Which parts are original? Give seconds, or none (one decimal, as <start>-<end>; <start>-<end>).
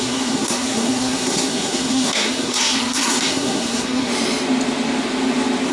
4.1-5.7